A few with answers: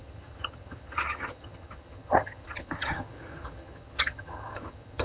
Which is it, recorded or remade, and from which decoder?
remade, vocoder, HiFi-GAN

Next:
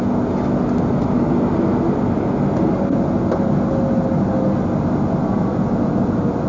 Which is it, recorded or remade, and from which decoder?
recorded